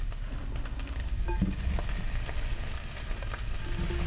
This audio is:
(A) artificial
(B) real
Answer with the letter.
B